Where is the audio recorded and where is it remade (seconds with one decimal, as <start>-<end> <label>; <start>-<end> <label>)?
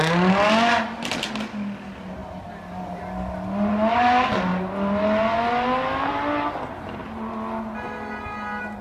0.0-8.8 recorded